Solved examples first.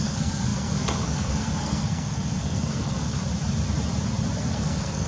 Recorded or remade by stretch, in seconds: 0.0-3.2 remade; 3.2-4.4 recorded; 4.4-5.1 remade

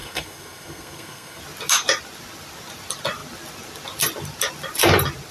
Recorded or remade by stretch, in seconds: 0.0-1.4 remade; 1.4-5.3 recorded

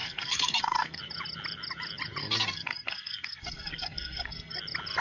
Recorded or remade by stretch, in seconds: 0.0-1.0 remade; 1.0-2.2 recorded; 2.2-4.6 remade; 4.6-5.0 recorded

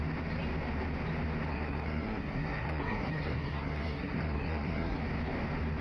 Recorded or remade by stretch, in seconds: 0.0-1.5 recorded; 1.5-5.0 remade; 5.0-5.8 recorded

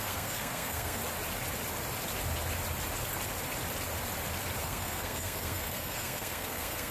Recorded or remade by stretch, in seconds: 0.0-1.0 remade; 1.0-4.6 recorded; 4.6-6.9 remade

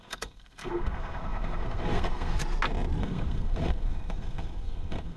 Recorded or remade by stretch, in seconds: 0.0-2.4 remade; 2.4-3.0 recorded; 3.0-5.2 remade